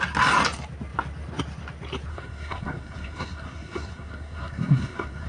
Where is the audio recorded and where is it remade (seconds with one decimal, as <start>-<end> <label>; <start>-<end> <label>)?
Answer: 0.0-2.1 recorded; 2.1-5.3 remade